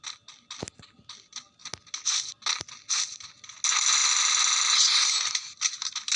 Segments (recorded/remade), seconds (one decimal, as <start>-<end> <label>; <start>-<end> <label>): 0.0-6.2 recorded